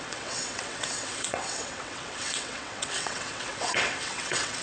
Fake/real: fake